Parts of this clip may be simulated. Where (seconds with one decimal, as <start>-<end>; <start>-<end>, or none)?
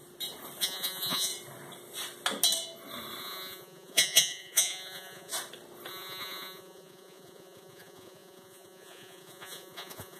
0.6-1.3; 3.2-5.3; 5.9-10.2